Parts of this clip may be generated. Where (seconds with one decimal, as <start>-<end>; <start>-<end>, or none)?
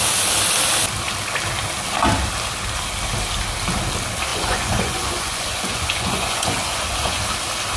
4.3-7.2